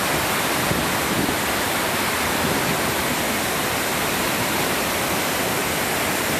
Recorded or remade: recorded